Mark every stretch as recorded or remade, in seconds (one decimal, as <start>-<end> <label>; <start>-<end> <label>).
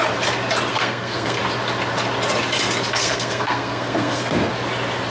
0.0-0.7 recorded; 0.7-1.4 remade; 1.4-2.9 recorded; 2.9-4.5 remade; 4.5-5.1 recorded